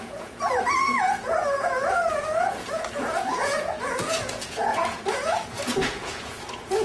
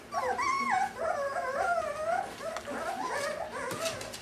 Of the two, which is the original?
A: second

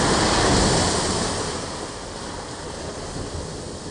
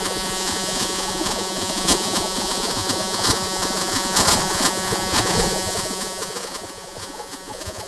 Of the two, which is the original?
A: first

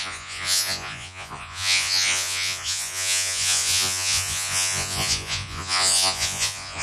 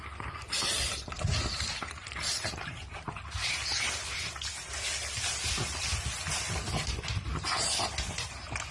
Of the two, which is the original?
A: second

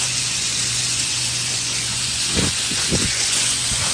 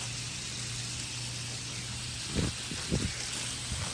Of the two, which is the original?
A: second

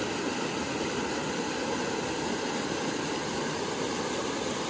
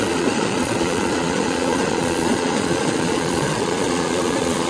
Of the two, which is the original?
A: first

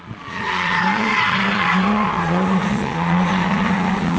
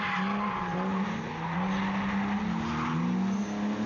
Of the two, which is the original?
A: second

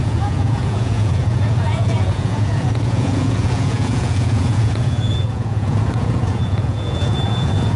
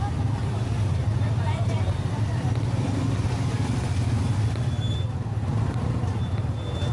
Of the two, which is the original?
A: second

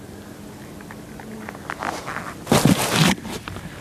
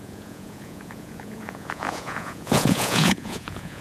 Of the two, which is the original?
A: first